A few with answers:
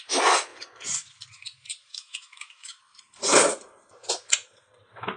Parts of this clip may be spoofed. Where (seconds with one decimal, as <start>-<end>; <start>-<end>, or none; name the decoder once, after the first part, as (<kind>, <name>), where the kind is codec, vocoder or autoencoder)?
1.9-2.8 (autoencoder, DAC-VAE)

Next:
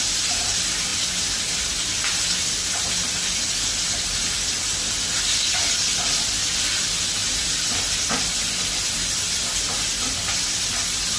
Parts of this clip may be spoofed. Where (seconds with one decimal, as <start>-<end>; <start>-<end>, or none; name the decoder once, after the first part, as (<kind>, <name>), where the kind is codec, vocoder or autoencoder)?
none

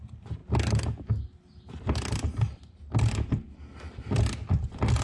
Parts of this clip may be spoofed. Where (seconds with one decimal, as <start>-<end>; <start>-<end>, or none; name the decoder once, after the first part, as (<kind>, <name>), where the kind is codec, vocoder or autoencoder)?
none